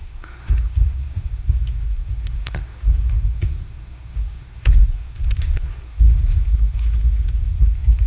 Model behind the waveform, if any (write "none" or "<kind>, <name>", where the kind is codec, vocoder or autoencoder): codec, SNAC